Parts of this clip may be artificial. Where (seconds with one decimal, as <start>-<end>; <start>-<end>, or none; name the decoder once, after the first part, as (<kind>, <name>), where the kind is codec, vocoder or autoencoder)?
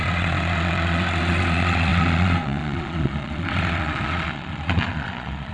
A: 0.0-5.5 (vocoder, Vocos)